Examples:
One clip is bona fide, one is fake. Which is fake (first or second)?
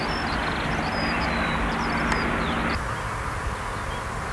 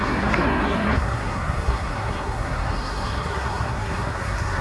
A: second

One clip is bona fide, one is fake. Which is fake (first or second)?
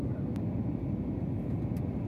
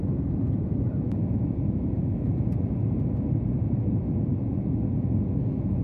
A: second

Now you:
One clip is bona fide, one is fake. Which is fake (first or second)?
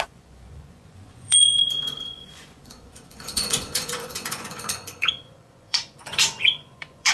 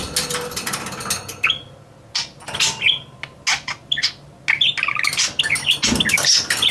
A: first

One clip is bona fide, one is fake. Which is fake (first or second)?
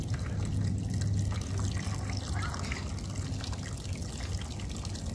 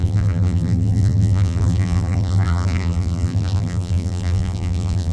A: second